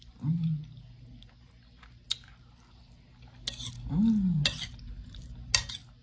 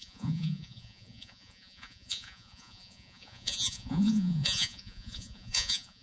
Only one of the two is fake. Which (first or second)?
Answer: second